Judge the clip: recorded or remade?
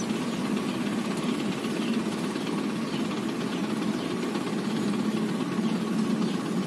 recorded